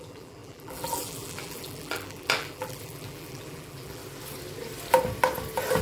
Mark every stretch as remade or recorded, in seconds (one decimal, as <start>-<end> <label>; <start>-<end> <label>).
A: 0.0-4.0 remade; 4.0-5.8 recorded

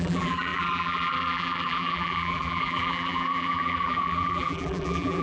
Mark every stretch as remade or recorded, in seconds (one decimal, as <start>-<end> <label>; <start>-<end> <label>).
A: 0.0-5.2 remade

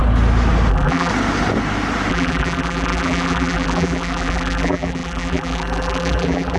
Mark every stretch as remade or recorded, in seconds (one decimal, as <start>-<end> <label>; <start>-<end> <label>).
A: 0.0-0.7 recorded; 0.7-1.1 remade; 1.1-2.1 recorded; 2.1-6.6 remade

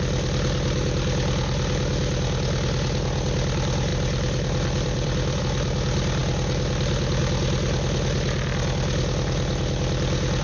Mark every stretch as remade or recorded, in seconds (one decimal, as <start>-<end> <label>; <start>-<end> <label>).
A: 0.0-3.9 recorded; 3.9-5.4 remade; 5.4-10.4 recorded

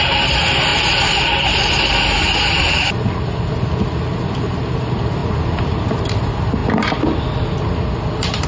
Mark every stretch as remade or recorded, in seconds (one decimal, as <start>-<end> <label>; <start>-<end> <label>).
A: 0.0-8.5 recorded

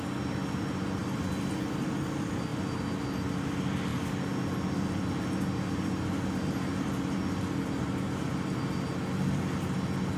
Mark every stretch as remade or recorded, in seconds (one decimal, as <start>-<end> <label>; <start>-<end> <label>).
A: 0.0-10.2 recorded